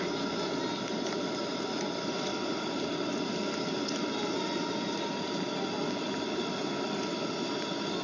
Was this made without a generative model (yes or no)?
yes